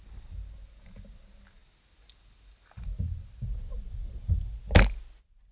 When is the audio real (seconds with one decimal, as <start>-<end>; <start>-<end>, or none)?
0.0-3.7; 4.6-5.5